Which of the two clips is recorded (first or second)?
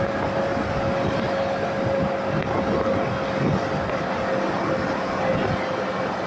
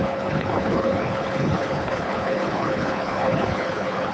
first